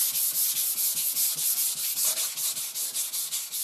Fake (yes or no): no